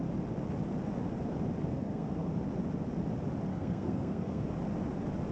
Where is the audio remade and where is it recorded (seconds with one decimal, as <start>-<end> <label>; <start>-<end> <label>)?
0.0-1.7 recorded; 1.7-2.3 remade; 2.3-3.5 recorded; 3.5-4.4 remade; 4.4-5.3 recorded